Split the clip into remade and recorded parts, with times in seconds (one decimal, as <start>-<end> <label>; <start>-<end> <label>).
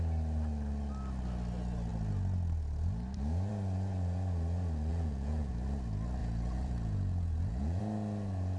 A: 0.0-4.9 recorded; 4.9-5.5 remade; 5.5-6.2 recorded; 6.2-7.8 remade; 7.8-8.6 recorded